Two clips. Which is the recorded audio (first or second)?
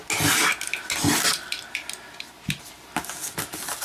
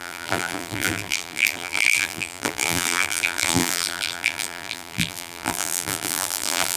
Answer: first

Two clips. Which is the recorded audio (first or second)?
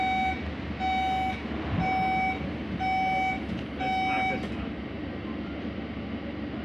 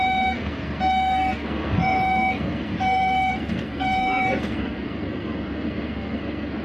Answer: first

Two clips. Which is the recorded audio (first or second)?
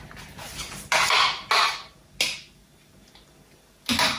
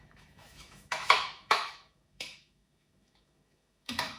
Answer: first